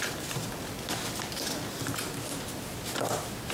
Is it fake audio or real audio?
real